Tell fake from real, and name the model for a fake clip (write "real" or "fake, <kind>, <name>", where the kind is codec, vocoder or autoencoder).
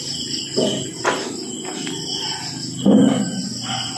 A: real